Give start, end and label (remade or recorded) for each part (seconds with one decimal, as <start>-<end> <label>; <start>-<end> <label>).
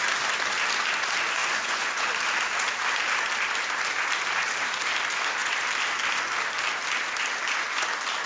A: 0.0-1.4 recorded; 1.4-2.1 remade; 2.1-8.3 recorded